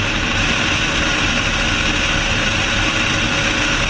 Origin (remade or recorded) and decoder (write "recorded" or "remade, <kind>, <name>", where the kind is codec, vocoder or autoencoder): recorded